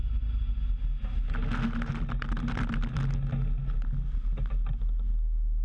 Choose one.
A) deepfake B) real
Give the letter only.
B